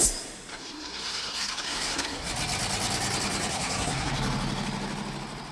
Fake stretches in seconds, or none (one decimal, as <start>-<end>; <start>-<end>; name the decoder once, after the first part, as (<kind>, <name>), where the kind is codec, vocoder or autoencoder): 0.5-2.3 (codec, SNAC); 3.5-4.1